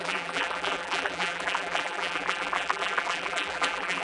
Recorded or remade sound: remade